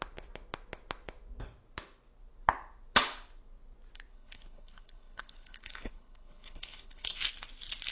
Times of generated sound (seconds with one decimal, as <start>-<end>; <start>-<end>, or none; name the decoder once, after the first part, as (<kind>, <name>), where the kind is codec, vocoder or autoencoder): 4.1-7.2 (codec, HILCodec)